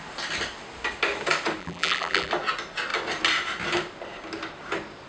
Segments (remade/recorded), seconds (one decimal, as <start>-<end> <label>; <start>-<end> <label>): 0.0-1.6 recorded; 1.6-2.3 remade; 2.3-5.1 recorded